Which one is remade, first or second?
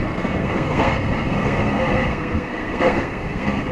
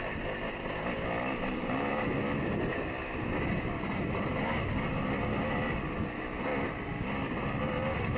first